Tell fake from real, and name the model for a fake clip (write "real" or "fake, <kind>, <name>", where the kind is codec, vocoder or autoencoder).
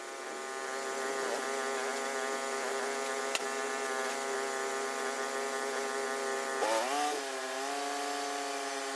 real